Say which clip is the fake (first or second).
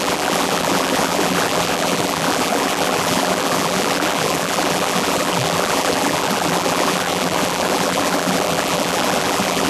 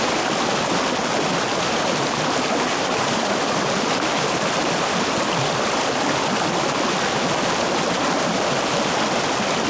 first